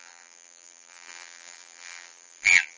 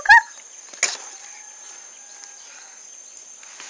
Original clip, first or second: second